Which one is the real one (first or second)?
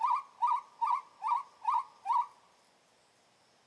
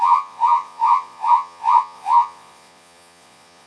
first